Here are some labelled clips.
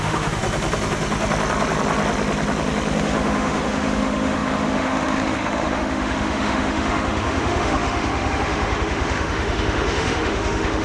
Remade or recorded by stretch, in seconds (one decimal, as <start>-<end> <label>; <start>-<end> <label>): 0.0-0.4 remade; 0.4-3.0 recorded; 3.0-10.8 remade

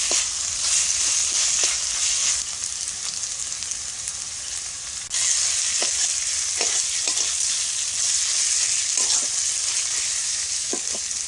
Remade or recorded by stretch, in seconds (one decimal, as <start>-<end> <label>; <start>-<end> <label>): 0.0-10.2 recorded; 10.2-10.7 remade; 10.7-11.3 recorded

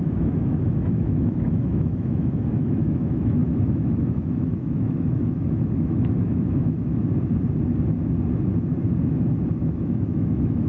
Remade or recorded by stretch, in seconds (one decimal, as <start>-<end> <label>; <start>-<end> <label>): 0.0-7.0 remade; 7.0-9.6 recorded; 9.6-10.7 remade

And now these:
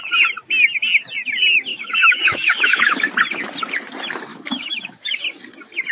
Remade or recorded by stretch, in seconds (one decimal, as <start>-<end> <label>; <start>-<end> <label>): 0.0-1.7 recorded; 1.7-3.1 remade; 3.1-4.3 recorded; 4.3-5.2 remade; 5.2-5.9 recorded